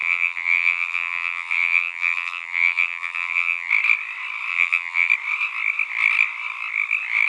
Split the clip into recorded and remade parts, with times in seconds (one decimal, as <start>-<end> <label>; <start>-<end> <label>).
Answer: 0.0-3.7 remade; 3.7-4.5 recorded; 4.5-5.1 remade; 5.1-7.3 recorded